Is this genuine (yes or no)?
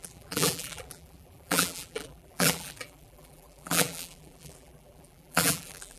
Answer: no